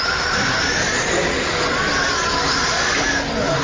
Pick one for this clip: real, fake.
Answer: real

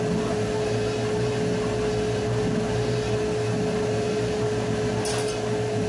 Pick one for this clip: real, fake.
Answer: real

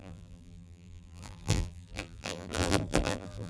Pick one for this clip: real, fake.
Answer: fake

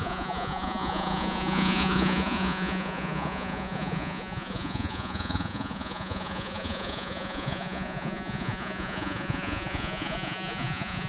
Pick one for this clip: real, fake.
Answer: fake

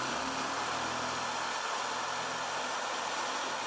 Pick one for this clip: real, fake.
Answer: real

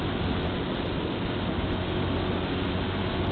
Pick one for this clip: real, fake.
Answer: real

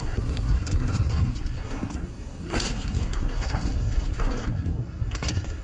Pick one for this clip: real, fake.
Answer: fake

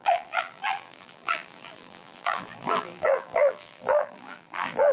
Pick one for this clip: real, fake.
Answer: fake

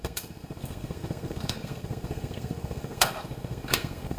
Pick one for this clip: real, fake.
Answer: fake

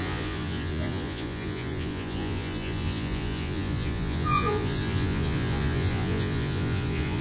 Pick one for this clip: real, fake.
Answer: fake